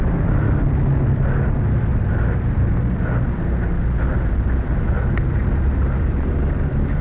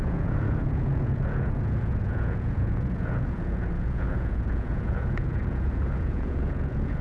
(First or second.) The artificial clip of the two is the second